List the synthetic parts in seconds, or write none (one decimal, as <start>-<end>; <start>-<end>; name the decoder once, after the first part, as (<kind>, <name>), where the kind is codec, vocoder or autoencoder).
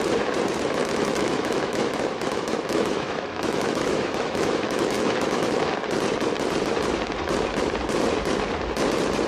0.8-5.7 (autoencoder, DAC-VAE)